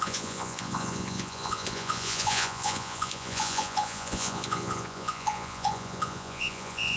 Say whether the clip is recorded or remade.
remade